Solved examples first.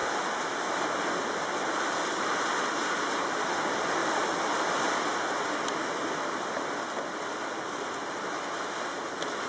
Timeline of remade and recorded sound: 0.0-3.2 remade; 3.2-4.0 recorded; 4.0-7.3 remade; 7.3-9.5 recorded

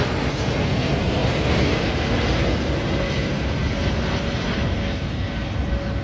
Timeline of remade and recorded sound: 0.0-6.0 recorded